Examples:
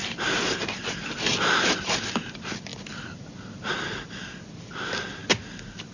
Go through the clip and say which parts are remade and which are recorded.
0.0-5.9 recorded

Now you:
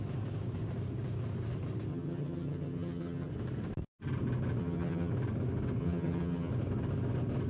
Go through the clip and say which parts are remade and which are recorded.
0.0-1.9 recorded; 1.9-3.3 remade; 3.3-4.6 recorded; 4.6-5.1 remade; 5.1-5.8 recorded; 5.8-6.5 remade; 6.5-7.5 recorded

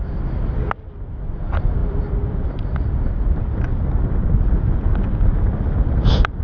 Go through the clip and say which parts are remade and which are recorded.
0.0-6.4 recorded

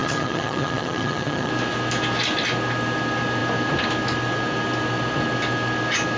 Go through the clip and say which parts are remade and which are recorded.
0.0-1.5 remade; 1.5-6.2 recorded

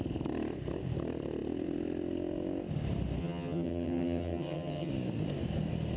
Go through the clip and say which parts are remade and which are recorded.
0.0-3.2 recorded; 3.2-4.9 remade; 4.9-6.0 recorded